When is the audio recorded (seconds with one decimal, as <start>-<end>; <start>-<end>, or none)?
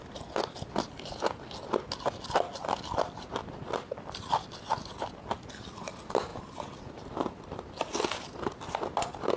0.0-9.4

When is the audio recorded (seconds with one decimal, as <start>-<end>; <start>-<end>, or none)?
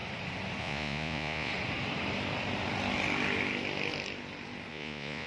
0.0-0.6; 1.5-4.7